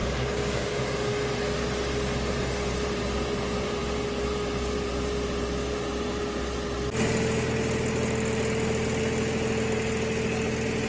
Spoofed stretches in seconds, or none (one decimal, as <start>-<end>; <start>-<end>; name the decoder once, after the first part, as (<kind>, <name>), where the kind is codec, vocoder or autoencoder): 0.0-0.8 (codec, DAC)